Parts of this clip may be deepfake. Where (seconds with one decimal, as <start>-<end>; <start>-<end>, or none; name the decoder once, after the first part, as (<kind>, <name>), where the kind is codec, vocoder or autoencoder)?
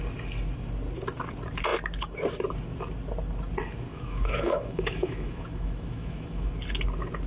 3.9-6.5 (autoencoder, DAC-VAE)